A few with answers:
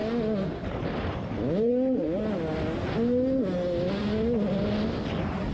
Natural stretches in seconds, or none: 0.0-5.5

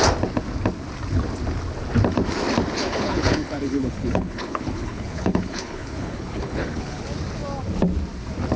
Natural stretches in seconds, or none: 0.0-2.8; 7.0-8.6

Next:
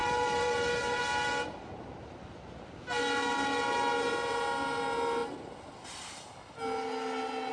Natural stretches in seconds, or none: 1.0-7.5

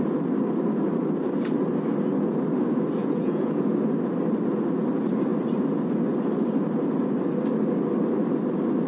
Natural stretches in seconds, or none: 0.0-3.0; 3.6-8.9

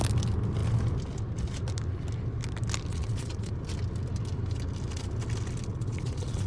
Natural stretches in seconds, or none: 0.0-2.9; 3.5-5.7